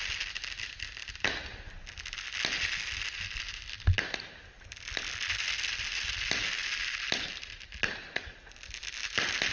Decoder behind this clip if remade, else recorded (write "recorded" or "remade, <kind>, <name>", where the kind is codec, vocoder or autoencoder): recorded